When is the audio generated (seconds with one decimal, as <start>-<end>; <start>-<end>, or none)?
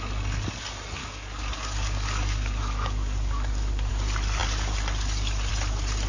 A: 1.0-3.9